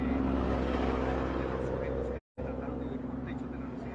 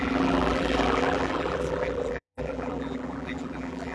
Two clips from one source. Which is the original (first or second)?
first